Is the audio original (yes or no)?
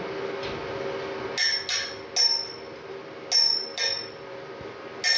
yes